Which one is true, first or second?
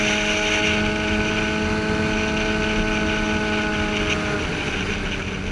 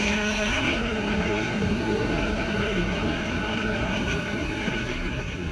first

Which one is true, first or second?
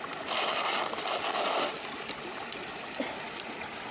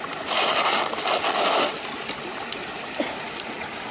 first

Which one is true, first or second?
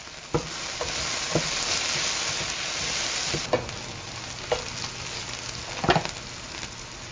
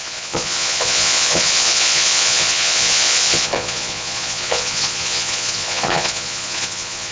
first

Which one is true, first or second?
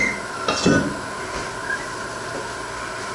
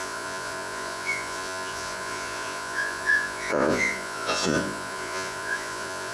first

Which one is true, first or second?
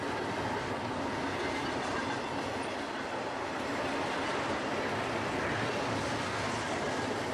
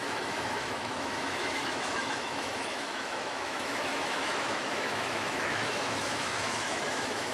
first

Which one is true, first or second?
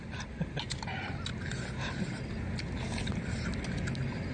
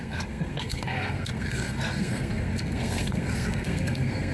first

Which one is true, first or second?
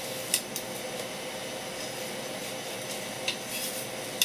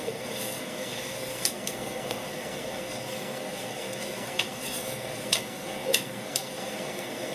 first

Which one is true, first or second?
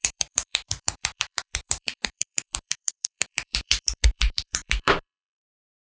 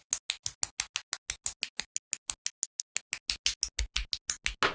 second